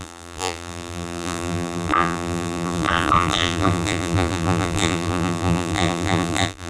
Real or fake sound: fake